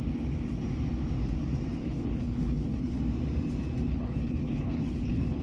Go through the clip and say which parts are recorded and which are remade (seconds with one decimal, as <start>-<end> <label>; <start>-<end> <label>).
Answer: 0.0-1.8 recorded; 1.8-3.0 remade; 3.0-3.9 recorded; 3.9-5.4 remade